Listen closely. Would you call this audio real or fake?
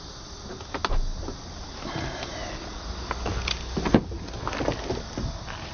real